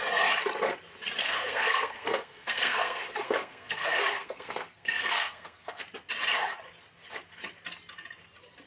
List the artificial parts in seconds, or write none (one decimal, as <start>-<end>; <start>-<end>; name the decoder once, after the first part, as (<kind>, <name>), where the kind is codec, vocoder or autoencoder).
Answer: 1.2-5.8 (codec, SNAC)